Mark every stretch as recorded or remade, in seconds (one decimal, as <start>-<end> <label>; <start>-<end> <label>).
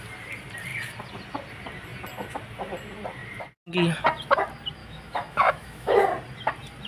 0.0-4.8 recorded; 4.8-6.0 remade; 6.0-6.9 recorded